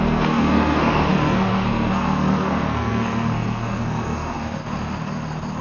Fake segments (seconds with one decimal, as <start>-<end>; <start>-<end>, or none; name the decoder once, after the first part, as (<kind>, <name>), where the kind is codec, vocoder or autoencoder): 0.0-4.6 (codec, SNAC)